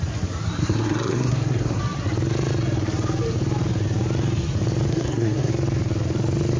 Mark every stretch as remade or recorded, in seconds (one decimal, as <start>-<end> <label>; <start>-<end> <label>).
0.0-0.6 recorded; 0.6-1.8 remade; 1.8-4.9 recorded; 4.9-5.5 remade; 5.5-6.6 recorded